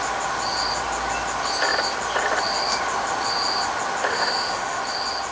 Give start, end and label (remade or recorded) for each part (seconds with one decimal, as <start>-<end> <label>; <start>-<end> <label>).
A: 0.0-4.1 recorded; 4.1-4.8 remade; 4.8-5.3 recorded